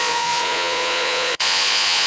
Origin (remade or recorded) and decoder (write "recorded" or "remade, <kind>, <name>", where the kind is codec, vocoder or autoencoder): remade, vocoder, Vocos